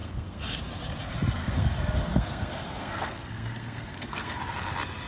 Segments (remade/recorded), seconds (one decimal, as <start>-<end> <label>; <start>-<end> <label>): 0.0-0.6 remade; 0.6-1.4 recorded; 1.4-4.4 remade; 4.4-5.1 recorded